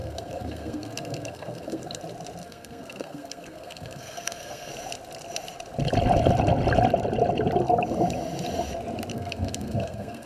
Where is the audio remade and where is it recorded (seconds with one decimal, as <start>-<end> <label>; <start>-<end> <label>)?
0.0-2.0 remade; 2.0-2.4 recorded; 2.4-4.7 remade; 4.7-9.1 recorded; 9.1-10.3 remade